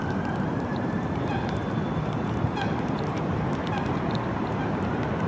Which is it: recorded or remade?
remade